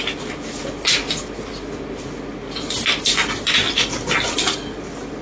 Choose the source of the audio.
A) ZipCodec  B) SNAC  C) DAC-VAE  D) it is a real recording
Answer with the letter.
D